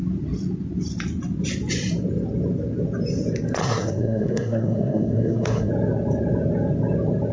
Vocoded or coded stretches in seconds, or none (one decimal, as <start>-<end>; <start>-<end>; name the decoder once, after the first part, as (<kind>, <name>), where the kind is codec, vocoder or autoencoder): 3.6-5.7 (codec, SNAC)